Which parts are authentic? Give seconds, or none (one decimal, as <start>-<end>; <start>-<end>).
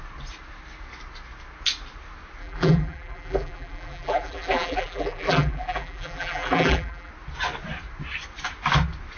0.0-2.4; 7.1-9.2